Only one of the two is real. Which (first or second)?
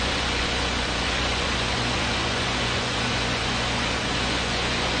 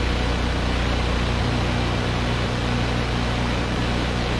second